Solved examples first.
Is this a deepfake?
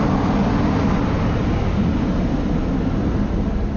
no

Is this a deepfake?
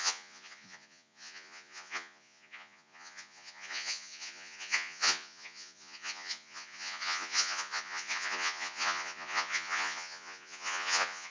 yes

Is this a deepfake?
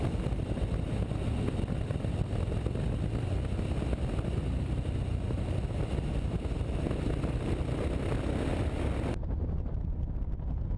no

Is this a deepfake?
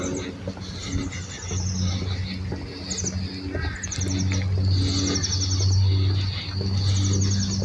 no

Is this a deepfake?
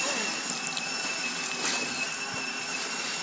no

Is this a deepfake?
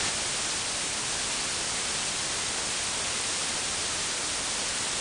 no